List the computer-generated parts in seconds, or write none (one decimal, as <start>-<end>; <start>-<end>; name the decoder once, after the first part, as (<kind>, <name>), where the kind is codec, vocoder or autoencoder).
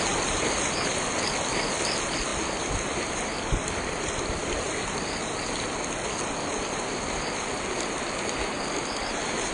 none